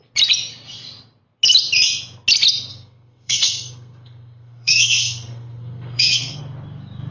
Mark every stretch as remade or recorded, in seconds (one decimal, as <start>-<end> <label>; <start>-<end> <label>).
0.0-2.7 recorded; 2.7-6.4 remade; 6.4-7.1 recorded

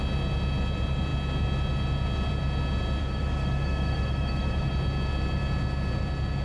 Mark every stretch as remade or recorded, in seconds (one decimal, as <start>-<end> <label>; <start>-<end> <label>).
0.0-3.0 recorded; 3.0-4.7 remade; 4.7-6.4 recorded

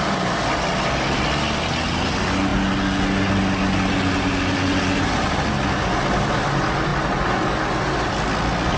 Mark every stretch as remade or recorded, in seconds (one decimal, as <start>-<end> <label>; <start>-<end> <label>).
0.0-8.8 recorded

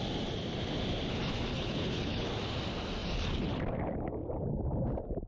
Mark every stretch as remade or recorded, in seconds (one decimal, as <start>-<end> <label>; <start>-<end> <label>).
0.0-1.5 recorded; 1.5-2.3 remade; 2.3-5.3 recorded

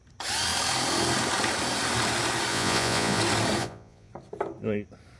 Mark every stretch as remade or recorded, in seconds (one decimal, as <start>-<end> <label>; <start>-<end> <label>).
0.0-2.5 recorded; 2.5-3.2 remade; 3.2-3.6 recorded; 3.6-4.1 remade; 4.1-5.2 recorded

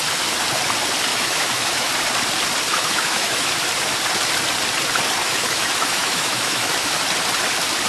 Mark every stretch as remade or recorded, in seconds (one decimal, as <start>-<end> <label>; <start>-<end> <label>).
0.0-1.1 recorded; 1.1-1.9 remade; 1.9-2.7 recorded; 2.7-3.5 remade; 3.5-5.2 recorded; 5.2-6.9 remade; 6.9-7.9 recorded

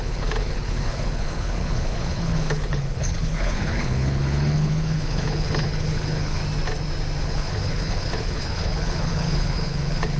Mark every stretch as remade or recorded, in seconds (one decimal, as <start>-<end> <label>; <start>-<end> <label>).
0.0-6.4 remade; 6.4-7.2 recorded; 7.2-10.2 remade